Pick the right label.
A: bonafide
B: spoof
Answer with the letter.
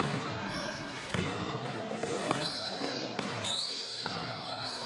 B